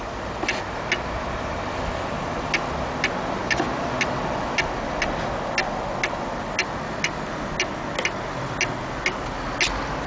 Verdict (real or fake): real